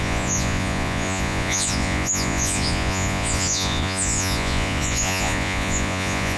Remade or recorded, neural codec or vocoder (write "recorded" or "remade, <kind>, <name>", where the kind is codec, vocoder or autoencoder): remade, vocoder, Vocos